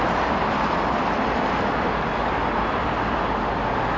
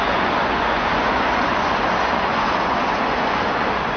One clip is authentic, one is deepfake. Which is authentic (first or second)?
first